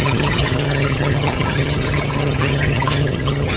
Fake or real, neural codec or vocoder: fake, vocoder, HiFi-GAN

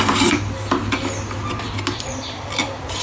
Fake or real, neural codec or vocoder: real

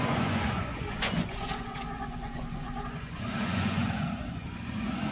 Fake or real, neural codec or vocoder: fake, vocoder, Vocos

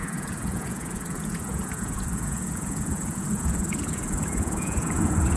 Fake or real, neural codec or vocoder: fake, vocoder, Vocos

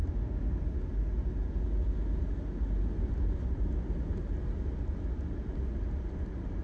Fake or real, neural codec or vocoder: real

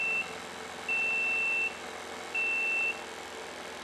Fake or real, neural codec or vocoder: real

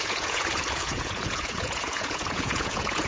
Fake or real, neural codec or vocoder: fake, vocoder, Vocos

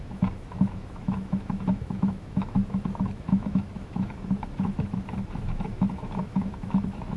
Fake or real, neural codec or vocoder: fake, autoencoder, DAC-VAE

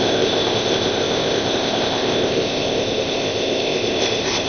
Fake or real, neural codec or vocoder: fake, codec, ZipCodec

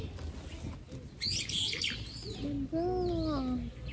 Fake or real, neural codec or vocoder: real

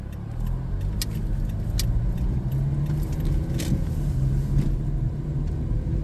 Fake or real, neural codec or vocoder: real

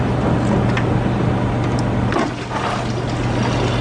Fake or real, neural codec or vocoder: real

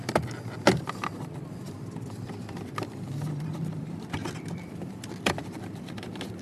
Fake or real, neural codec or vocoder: fake, vocoder, BigVGAN v2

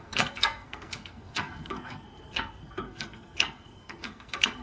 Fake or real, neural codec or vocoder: fake, codec, SNAC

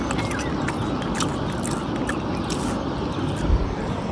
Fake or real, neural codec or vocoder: real